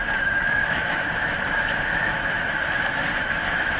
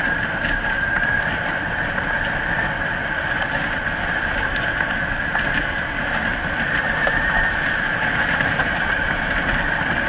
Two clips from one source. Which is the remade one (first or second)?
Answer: first